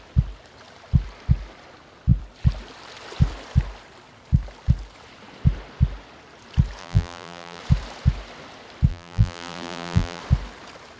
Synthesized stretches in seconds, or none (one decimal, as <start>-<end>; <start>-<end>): 6.8-7.6; 8.9-10.2